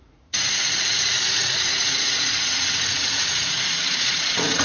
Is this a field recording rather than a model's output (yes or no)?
no